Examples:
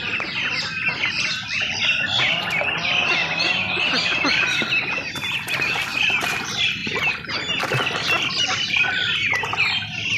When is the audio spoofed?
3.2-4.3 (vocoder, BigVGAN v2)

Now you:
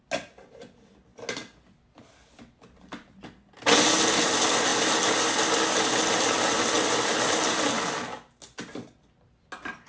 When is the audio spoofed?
none

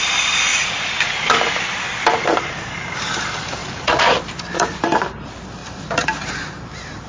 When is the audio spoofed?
0.5-1.2 (vocoder, Vocos); 3.6-4.2

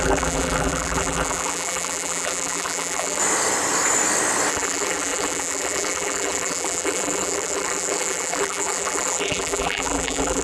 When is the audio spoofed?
0.0-3.2 (vocoder, BigVGAN v2); 4.5-10.4

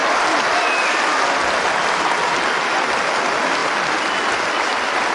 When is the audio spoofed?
none

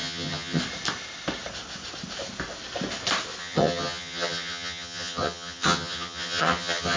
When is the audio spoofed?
0.0-0.6 (vocoder, HiFi-GAN); 3.4-7.0

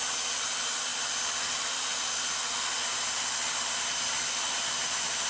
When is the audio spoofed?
none